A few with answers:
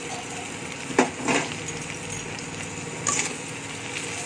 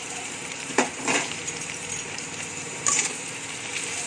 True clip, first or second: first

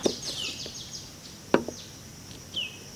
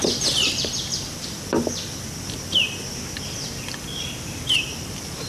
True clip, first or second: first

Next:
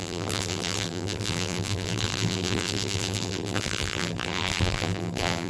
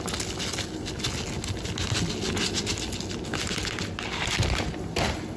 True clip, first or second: second